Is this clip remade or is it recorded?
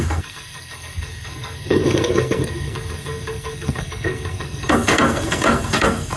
remade